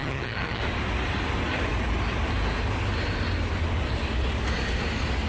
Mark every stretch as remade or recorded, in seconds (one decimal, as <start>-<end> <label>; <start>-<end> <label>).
0.0-0.6 remade; 0.6-5.3 recorded